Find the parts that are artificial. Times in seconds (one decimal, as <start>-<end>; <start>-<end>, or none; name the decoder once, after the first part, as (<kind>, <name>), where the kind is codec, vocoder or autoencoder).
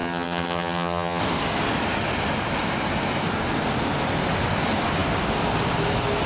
0.0-1.2 (vocoder, HiFi-GAN)